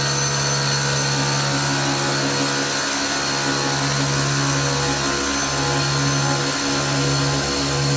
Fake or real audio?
real